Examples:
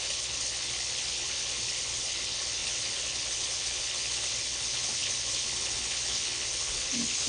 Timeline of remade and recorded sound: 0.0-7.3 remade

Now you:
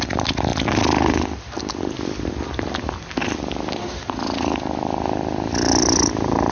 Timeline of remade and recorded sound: 0.0-6.5 recorded

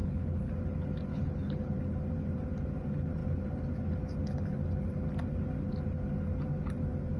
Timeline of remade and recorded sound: 0.0-0.5 remade; 0.5-1.1 recorded; 1.1-1.7 remade; 1.7-7.2 recorded

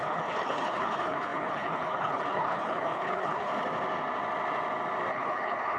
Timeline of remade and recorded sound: 0.0-3.5 remade; 3.5-5.1 recorded; 5.1-5.8 remade

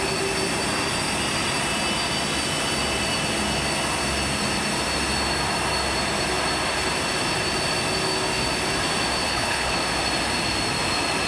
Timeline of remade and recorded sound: 0.0-9.2 recorded; 9.2-9.7 remade; 9.7-11.3 recorded

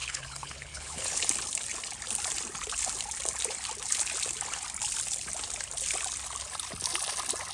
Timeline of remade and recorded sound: 0.0-1.2 remade; 1.2-7.5 recorded